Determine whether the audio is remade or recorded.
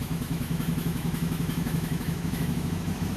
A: remade